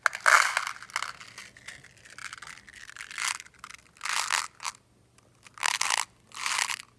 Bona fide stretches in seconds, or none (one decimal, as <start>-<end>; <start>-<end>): 0.0-7.0